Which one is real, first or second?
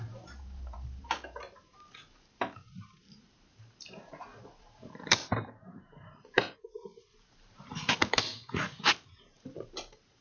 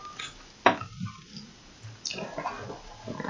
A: second